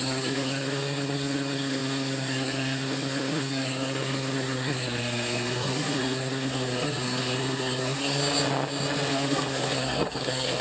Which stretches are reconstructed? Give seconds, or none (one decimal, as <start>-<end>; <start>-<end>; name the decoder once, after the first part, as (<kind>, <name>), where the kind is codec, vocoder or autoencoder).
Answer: 0.0-8.2 (codec, SNAC); 9.1-10.6